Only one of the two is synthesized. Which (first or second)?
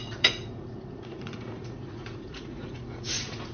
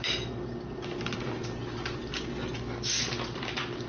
first